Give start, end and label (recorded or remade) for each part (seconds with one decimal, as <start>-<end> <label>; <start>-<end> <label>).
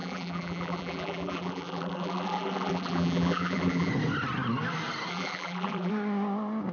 0.0-3.9 remade; 3.9-5.1 recorded; 5.1-5.9 remade; 5.9-6.7 recorded